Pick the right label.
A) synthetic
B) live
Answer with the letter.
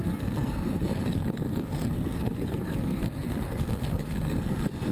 A